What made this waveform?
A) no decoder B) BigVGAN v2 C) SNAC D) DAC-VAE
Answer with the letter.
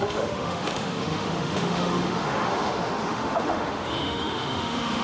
D